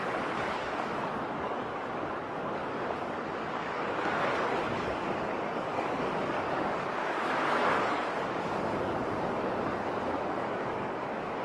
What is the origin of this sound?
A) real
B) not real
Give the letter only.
B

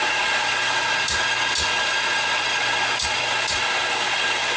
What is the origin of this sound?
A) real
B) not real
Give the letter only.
A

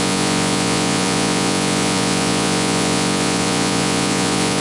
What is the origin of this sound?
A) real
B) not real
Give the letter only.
B